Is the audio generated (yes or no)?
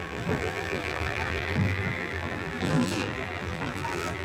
yes